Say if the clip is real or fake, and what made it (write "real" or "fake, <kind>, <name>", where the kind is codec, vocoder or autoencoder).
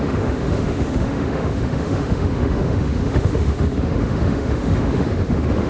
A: fake, autoencoder, DAC-VAE